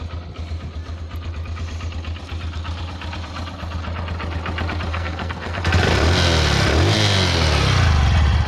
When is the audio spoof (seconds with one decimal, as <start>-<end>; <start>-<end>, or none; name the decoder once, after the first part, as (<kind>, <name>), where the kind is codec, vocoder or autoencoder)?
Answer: 4.9-5.6 (codec, SNAC)